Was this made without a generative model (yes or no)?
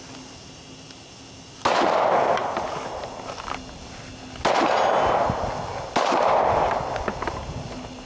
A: yes